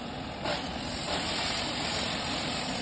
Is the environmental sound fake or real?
fake